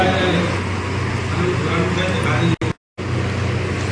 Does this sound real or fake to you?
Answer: real